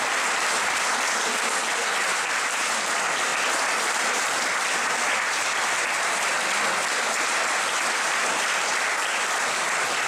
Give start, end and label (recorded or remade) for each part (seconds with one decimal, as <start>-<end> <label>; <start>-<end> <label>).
0.0-1.6 recorded; 1.6-2.9 remade; 2.9-3.3 recorded; 3.3-4.2 remade; 4.2-10.1 recorded